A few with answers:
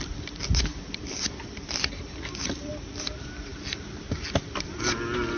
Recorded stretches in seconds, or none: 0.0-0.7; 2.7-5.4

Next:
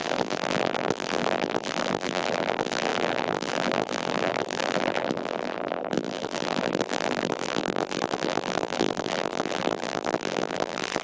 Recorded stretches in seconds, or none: none

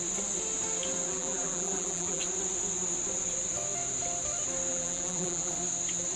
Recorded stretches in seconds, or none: 0.0-1.1; 2.2-4.7; 5.5-6.2

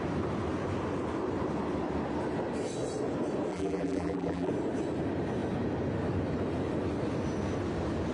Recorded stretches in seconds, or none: 0.0-3.5; 4.5-8.1

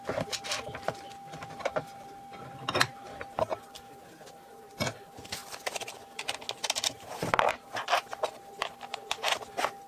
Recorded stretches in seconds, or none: 0.0-9.9

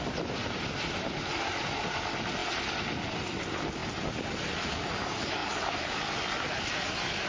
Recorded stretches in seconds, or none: 0.0-5.4; 5.9-7.3

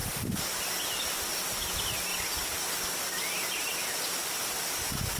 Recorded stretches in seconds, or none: 1.7-2.1; 4.3-5.2